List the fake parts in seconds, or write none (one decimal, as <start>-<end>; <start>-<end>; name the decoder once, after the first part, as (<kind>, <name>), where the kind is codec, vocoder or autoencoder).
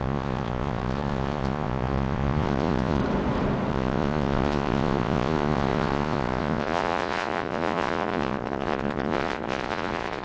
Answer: 0.0-3.0 (vocoder, Vocos); 3.7-10.2